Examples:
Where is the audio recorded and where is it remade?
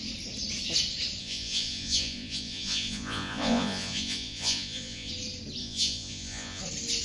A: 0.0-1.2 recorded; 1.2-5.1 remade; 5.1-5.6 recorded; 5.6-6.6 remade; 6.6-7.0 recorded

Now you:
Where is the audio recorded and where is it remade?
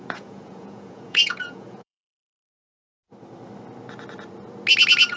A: 0.0-2.5 remade; 2.5-5.2 recorded